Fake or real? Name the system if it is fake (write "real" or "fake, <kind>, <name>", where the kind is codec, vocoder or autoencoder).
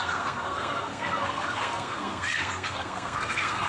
fake, codec, SNAC